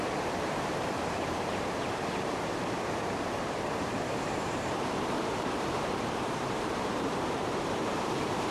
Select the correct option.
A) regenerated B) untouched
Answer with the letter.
A